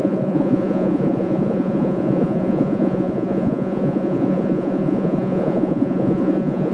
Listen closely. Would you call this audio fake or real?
fake